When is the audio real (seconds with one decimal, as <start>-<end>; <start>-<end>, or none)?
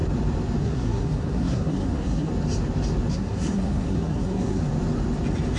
0.0-0.6; 2.3-3.1; 4.6-5.6